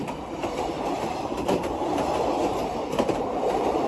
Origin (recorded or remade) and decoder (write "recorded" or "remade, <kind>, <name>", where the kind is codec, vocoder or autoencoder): remade, vocoder, BigVGAN v2